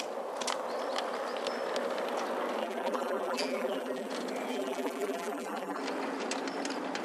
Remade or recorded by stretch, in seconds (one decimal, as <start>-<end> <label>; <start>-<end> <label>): 0.0-2.6 recorded; 2.6-4.1 remade; 4.1-4.5 recorded; 4.5-5.8 remade; 5.8-7.0 recorded